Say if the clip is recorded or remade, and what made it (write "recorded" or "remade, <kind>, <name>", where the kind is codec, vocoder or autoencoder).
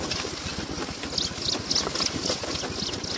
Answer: recorded